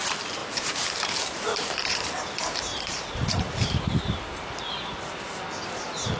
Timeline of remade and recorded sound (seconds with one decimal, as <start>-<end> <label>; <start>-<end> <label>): 0.0-0.4 recorded; 0.4-2.1 remade; 2.1-2.7 recorded; 2.7-5.0 remade; 5.0-6.2 recorded